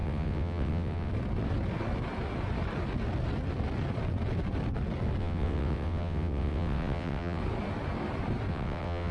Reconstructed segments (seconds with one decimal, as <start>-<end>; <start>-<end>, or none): 0.0-1.1; 5.2-7.4; 8.5-9.1